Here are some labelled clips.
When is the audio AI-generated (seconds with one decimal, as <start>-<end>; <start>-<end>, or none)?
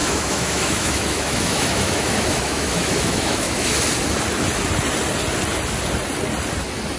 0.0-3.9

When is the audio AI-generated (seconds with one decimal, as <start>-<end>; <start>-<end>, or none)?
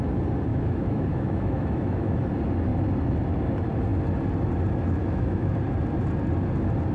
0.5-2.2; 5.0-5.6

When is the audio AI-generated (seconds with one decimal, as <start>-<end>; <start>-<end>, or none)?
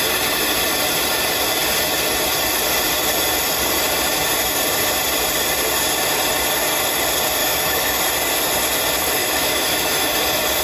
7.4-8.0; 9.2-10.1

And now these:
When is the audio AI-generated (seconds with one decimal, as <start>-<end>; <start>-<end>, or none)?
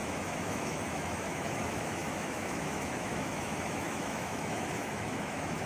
0.0-5.7